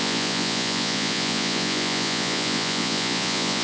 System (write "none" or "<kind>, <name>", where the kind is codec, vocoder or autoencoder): vocoder, Vocos